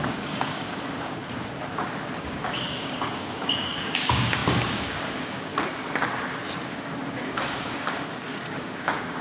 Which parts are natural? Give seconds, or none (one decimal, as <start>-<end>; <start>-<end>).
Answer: 1.2-2.0; 5.5-7.1